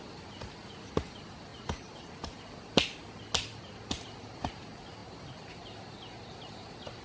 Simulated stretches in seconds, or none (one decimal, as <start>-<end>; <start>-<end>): 1.5-2.4